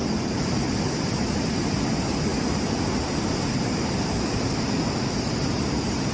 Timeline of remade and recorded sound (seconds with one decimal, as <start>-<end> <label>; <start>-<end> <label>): 0.0-1.7 remade; 1.7-6.1 recorded